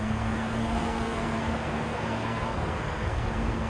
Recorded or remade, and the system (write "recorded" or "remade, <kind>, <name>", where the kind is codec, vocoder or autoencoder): remade, codec, SNAC